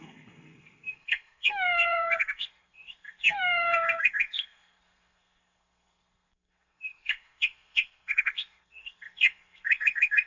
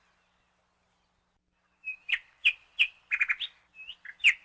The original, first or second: second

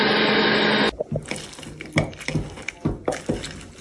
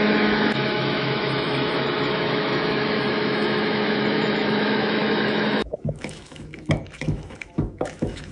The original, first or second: first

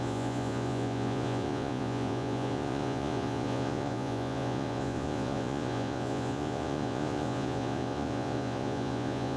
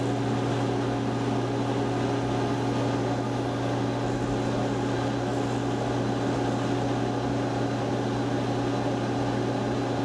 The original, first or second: second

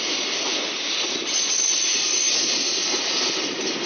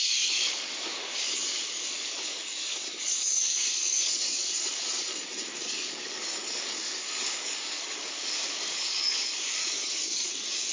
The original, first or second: first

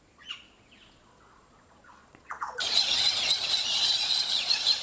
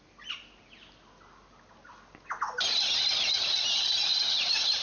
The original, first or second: second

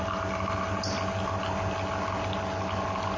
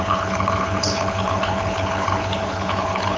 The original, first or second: first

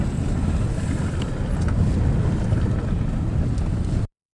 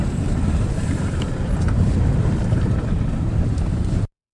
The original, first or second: first